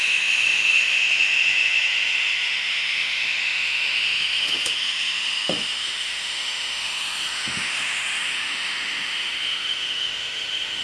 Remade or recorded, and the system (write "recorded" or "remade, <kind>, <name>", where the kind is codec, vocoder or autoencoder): remade, autoencoder, DAC-VAE